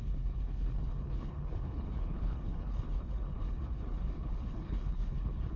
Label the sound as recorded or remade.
remade